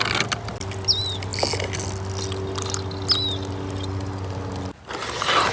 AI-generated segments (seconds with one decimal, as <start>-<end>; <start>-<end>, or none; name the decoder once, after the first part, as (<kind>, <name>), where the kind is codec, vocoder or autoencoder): none